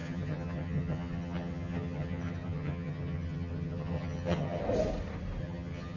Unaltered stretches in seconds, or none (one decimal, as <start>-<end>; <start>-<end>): 4.6-5.4